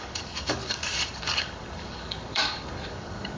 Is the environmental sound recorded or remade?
remade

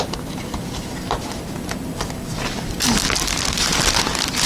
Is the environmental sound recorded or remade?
recorded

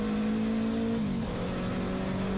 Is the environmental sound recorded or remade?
recorded